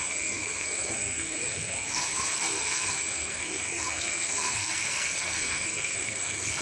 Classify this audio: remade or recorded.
remade